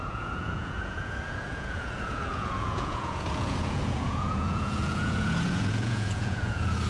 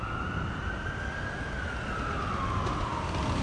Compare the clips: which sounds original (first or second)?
second